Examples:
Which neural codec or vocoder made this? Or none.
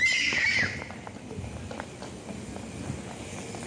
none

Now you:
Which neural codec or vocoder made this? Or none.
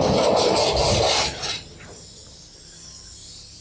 none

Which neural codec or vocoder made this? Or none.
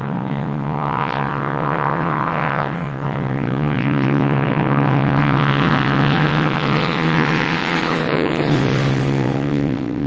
vocoder, WaveNeXt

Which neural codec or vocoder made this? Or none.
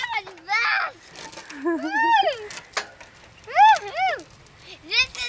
none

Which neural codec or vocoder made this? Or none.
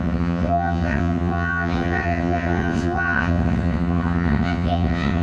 vocoder, WaveNeXt